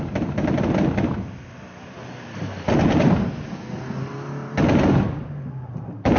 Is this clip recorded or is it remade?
recorded